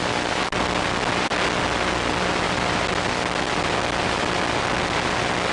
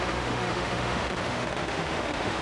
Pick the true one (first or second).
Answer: first